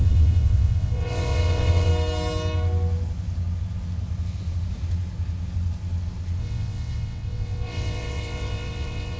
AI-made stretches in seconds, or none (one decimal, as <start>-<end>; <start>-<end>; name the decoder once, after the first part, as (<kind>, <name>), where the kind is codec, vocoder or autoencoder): 0.0-1.9 (vocoder, WaveNeXt); 6.4-9.2